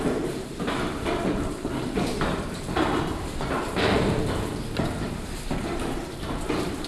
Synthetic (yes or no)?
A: yes